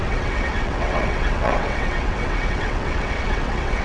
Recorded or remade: remade